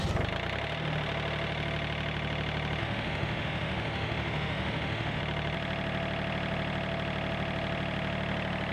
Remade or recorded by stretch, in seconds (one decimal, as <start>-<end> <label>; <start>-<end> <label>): 0.0-2.8 recorded; 2.8-5.2 remade; 5.2-8.7 recorded